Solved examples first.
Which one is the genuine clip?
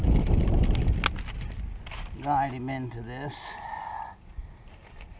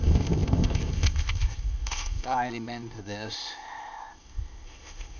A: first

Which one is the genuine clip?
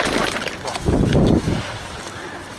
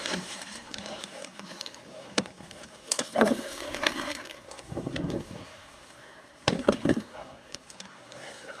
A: first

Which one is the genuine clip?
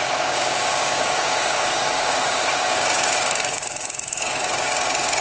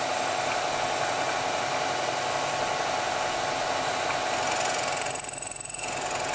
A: second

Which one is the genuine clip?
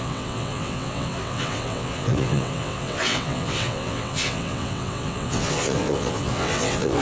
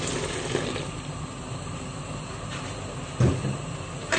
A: second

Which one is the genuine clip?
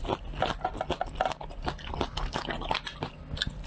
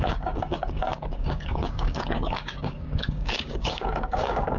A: first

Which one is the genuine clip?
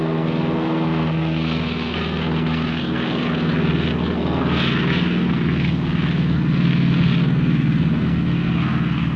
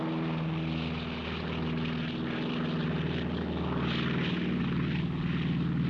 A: second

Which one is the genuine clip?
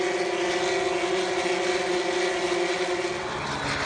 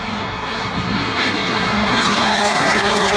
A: first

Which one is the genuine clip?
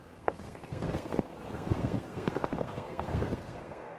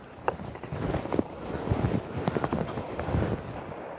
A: second